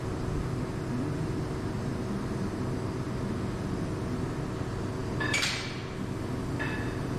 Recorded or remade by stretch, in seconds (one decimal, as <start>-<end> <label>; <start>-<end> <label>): 0.0-7.2 recorded